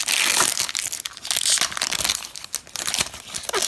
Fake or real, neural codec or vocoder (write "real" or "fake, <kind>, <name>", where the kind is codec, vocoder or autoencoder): real